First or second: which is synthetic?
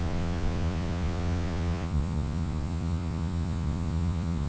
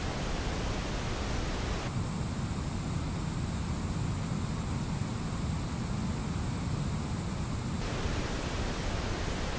first